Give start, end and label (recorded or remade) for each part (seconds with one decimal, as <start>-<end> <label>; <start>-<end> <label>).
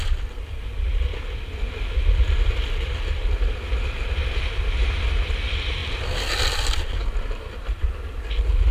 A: 0.0-8.7 recorded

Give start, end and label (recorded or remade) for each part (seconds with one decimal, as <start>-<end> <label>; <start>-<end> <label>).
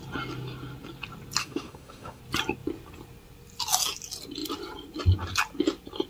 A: 0.0-1.4 recorded; 1.4-2.2 remade; 2.2-6.1 recorded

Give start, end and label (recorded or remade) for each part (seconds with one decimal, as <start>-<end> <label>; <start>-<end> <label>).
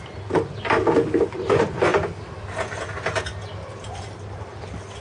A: 0.0-5.0 recorded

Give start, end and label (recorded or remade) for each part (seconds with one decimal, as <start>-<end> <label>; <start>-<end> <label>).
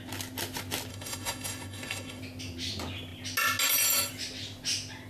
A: 0.0-0.9 recorded; 0.9-2.2 remade; 2.2-5.1 recorded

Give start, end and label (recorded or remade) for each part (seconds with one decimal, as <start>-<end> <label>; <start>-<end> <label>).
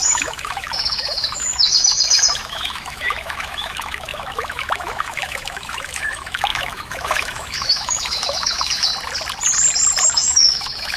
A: 0.0-8.9 remade; 8.9-10.1 recorded; 10.1-11.0 remade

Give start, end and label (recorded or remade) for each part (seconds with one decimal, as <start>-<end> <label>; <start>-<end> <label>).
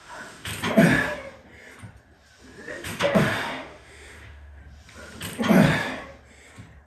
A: 0.0-0.5 remade; 0.5-2.7 recorded; 2.7-4.6 remade; 4.6-6.9 recorded